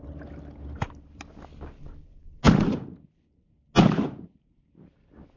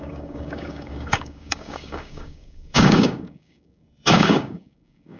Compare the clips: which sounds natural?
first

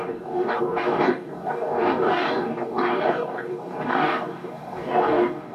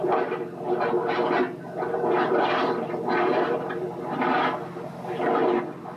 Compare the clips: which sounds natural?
second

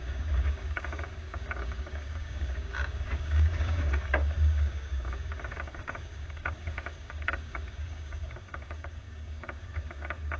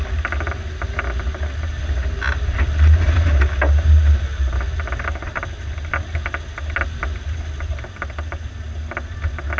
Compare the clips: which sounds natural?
second